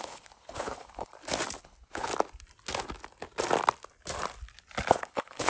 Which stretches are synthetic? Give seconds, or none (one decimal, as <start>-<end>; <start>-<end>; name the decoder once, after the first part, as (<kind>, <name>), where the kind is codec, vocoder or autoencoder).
0.0-1.1 (codec, HILCodec); 1.6-2.1; 4.9-5.5